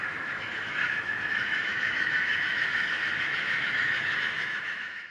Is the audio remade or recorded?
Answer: remade